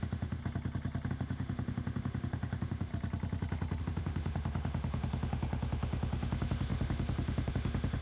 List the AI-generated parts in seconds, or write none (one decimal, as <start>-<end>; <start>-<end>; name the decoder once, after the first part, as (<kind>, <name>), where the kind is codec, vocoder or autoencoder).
0.0-0.4 (autoencoder, DAC-VAE); 1.1-2.9; 3.8-8.0